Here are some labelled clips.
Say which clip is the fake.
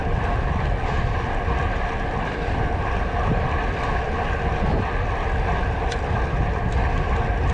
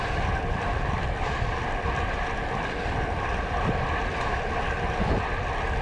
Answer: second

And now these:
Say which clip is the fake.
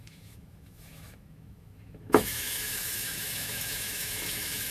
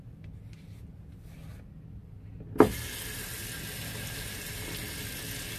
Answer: first